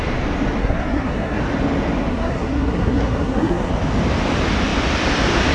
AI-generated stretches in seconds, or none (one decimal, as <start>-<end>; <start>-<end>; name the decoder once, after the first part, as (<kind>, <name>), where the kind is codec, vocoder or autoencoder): 0.6-1.4 (codec, SNAC); 2.1-3.7